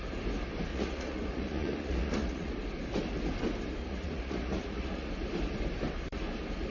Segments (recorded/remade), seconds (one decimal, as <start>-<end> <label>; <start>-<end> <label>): 0.0-0.7 recorded; 0.7-2.5 remade; 2.5-3.8 recorded; 3.8-5.1 remade; 5.1-6.7 recorded